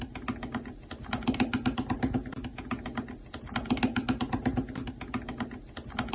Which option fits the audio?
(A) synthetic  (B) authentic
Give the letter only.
B